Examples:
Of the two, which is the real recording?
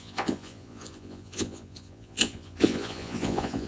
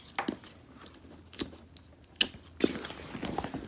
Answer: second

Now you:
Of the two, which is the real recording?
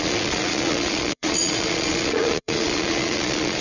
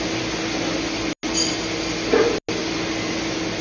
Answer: second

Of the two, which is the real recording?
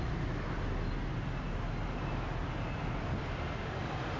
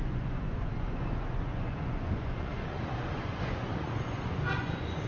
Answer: first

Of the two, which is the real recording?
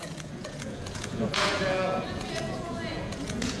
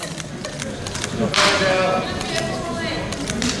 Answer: second